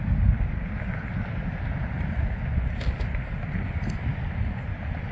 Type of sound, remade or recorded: recorded